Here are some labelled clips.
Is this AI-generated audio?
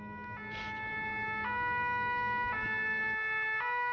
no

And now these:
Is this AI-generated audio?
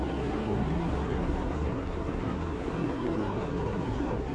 yes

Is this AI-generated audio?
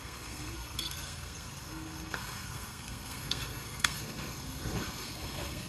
yes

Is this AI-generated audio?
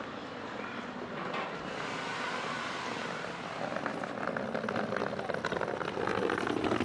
no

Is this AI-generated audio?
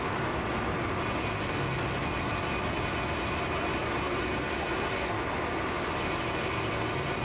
no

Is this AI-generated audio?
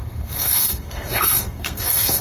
yes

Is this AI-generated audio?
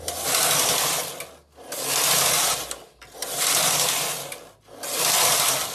no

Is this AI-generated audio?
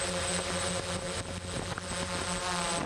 no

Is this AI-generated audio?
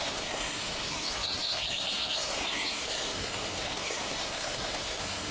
yes